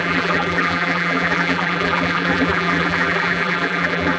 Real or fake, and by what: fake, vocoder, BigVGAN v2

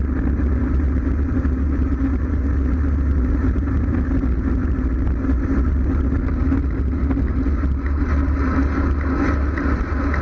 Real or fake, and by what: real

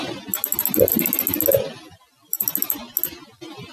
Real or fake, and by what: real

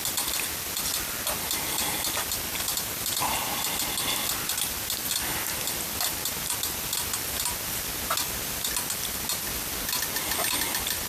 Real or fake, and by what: real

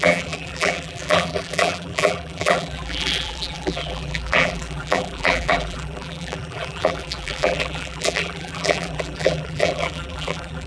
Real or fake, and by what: fake, vocoder, BigVGAN v2